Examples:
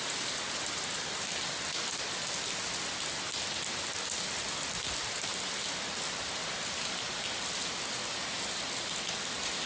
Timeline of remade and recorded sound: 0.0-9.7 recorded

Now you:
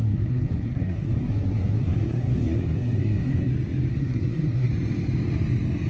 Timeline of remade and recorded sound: 0.0-3.5 remade; 3.5-3.9 recorded; 3.9-4.7 remade; 4.7-5.9 recorded

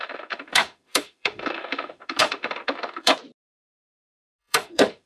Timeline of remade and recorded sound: 0.0-3.1 remade; 3.1-4.4 recorded; 4.4-5.1 remade

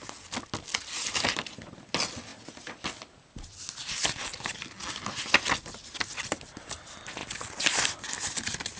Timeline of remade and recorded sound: 0.0-8.8 recorded

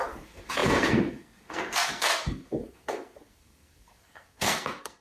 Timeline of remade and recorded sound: 0.0-5.0 remade

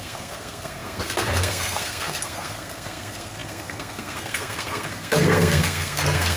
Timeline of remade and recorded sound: 0.0-6.4 remade

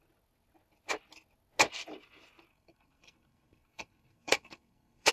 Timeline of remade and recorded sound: 0.0-2.5 recorded; 2.5-5.1 remade

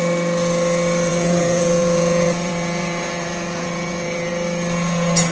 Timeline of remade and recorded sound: 0.0-1.1 recorded; 1.1-4.3 remade; 4.3-5.3 recorded